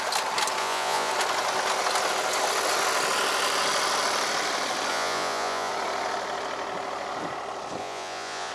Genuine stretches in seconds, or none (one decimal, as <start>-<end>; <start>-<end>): 0.0-0.6; 1.1-4.9; 5.7-7.8